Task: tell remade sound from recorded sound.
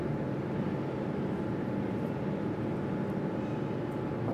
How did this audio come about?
recorded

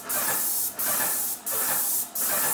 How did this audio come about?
recorded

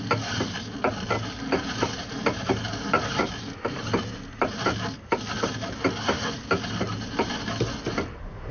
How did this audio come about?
recorded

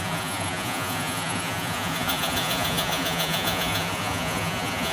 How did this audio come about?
remade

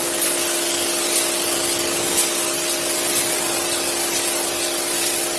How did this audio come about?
recorded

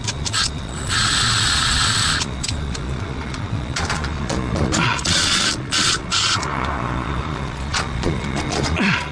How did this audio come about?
remade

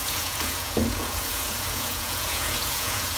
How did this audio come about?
remade